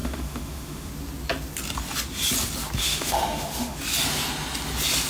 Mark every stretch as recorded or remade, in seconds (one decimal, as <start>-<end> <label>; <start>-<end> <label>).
0.0-0.9 remade; 0.9-2.8 recorded; 2.8-3.8 remade; 3.8-5.1 recorded